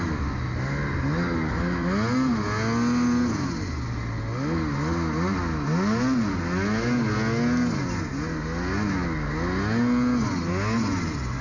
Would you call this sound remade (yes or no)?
no